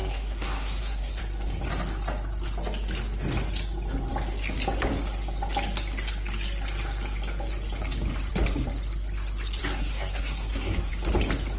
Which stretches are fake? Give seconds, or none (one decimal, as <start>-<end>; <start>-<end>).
0.0-1.2; 9.6-10.9